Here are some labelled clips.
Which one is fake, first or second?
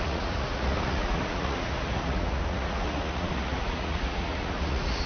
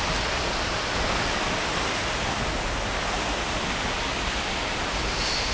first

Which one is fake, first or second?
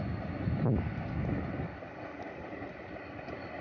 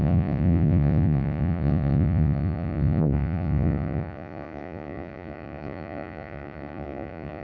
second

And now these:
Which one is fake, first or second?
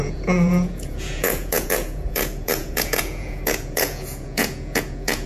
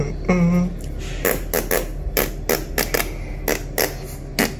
first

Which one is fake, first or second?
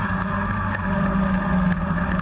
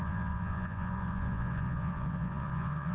second